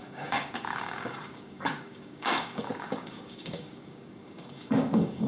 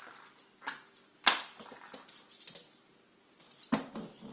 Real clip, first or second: second